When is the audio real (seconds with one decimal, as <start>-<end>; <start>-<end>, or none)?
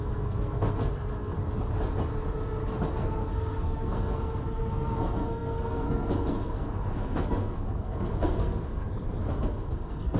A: 1.4-2.9